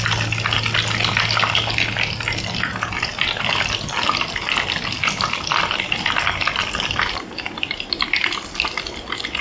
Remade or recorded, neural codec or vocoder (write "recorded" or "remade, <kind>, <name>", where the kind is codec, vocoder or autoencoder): recorded